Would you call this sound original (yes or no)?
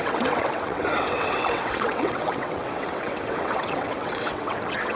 no